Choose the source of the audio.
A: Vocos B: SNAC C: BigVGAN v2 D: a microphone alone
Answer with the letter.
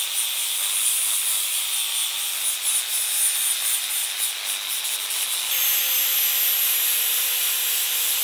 D